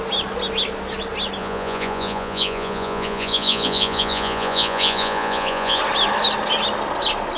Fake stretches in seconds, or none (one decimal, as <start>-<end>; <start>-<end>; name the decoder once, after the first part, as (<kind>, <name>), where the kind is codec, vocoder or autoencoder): 1.4-5.8 (vocoder, Vocos)